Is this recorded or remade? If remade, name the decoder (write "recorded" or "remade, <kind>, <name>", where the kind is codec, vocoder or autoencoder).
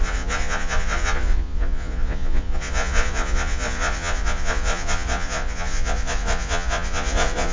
remade, vocoder, Vocos